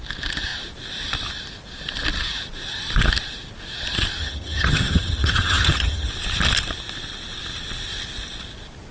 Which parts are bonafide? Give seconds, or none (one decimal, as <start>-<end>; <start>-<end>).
0.0-4.2; 6.1-8.9

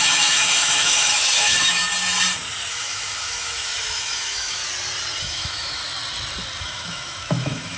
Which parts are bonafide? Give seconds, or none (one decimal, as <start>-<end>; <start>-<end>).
1.8-2.7; 4.6-5.2; 5.8-6.6